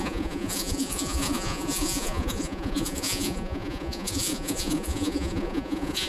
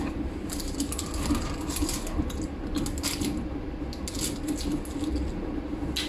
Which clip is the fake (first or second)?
first